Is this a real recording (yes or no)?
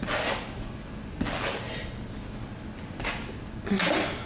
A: yes